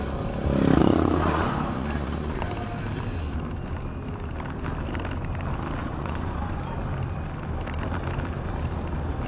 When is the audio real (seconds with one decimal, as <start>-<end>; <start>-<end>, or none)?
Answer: 0.0-0.8; 2.5-5.8; 6.6-9.3